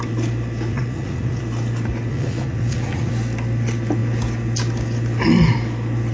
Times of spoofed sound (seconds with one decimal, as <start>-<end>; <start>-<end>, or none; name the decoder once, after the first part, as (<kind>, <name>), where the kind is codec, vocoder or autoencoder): 0.7-1.4 (vocoder, Vocos); 2.1-3.1